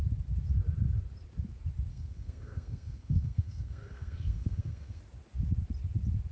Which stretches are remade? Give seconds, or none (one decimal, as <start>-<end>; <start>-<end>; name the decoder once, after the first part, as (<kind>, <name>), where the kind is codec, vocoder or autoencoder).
1.9-5.0 (codec, SNAC)